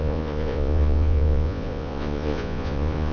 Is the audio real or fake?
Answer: fake